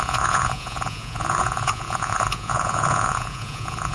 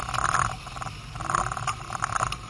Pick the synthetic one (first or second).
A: first